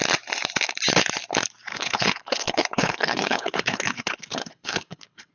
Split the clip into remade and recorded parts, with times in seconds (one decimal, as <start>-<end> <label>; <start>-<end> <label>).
0.0-1.7 recorded; 1.7-5.3 remade